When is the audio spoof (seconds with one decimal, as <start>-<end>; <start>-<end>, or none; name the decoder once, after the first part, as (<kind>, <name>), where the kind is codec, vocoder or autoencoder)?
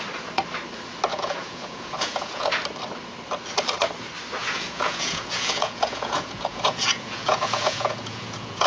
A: 1.1-2.5 (vocoder, Vocos); 4.4-8.7